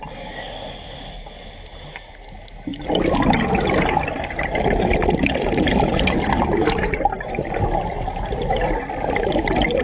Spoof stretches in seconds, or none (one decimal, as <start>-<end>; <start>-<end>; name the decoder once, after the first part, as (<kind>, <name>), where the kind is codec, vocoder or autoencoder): none